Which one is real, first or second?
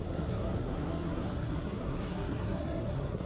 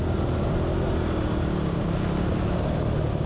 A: second